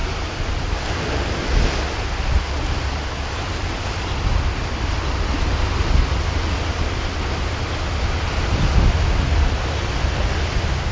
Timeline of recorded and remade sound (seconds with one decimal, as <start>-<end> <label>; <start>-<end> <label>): 0.0-1.0 remade; 1.0-10.9 recorded

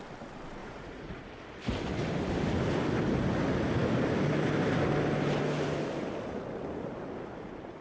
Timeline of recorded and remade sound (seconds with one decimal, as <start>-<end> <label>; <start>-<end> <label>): 0.0-0.6 recorded; 0.6-1.2 remade; 1.2-7.8 recorded

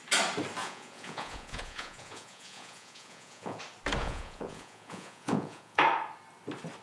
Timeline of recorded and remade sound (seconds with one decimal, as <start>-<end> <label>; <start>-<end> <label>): 0.0-0.6 recorded; 0.6-3.6 remade; 3.6-4.0 recorded; 4.0-5.8 remade; 5.8-6.8 recorded

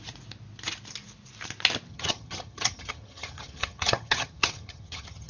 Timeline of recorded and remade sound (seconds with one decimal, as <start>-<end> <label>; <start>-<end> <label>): 0.0-1.9 recorded; 1.9-5.3 remade

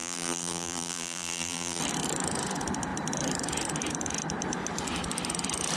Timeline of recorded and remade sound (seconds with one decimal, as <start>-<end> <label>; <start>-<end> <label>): 0.0-1.8 remade; 1.8-5.8 recorded

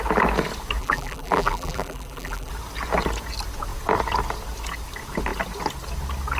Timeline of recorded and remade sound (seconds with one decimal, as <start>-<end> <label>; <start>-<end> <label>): 0.0-0.8 recorded; 0.8-2.5 remade; 2.5-6.4 recorded

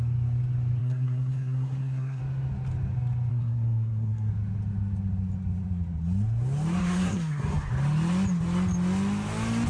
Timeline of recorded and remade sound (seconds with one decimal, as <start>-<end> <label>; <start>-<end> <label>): 0.0-0.8 recorded; 0.8-2.2 remade; 2.2-3.3 recorded; 3.3-4.3 remade; 4.3-6.8 recorded; 6.8-7.7 remade; 7.7-9.7 recorded

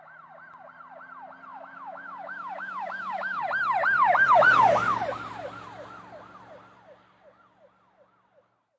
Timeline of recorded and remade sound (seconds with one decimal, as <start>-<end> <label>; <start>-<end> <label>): 0.0-1.5 recorded; 1.5-3.4 remade; 3.4-8.8 recorded